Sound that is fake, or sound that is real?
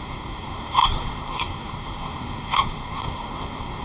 fake